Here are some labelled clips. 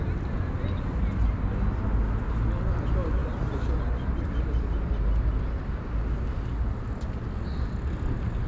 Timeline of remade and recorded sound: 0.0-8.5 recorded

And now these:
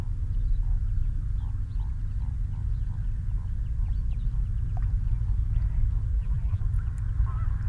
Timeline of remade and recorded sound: 0.0-6.1 recorded; 6.1-6.6 remade; 6.6-7.7 recorded

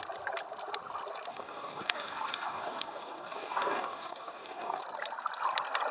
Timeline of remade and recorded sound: 0.0-1.3 recorded; 1.3-4.8 remade; 4.8-5.9 recorded

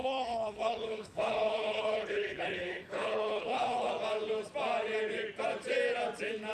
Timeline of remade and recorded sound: 0.0-3.9 remade; 3.9-6.5 recorded

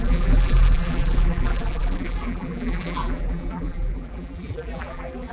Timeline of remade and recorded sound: 0.0-5.3 remade

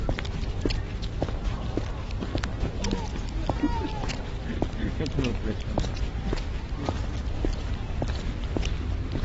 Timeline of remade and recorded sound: 0.0-5.3 recorded; 5.3-8.2 remade; 8.2-9.2 recorded

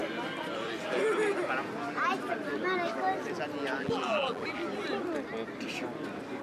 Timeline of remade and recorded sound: 0.0-3.8 recorded; 3.8-4.6 remade; 4.6-6.4 recorded